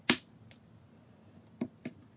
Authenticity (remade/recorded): recorded